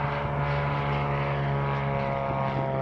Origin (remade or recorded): recorded